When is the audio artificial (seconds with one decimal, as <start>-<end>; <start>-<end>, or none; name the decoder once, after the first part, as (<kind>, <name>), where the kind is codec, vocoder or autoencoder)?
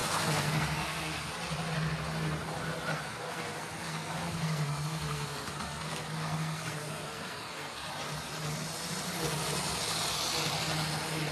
0.0-1.3 (codec, SNAC); 2.9-7.9